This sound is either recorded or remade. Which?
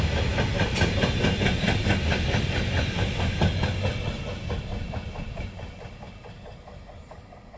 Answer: recorded